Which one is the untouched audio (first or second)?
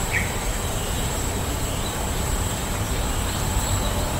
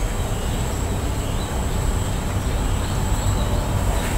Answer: second